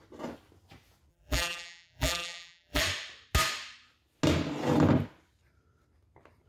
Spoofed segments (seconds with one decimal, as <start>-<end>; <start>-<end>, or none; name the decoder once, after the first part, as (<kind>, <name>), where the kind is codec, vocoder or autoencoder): 1.1-2.8 (vocoder, BigVGAN v2)